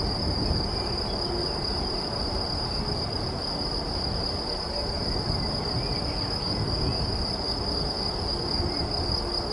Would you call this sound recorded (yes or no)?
yes